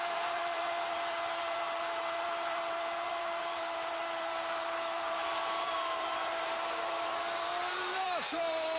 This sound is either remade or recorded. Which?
remade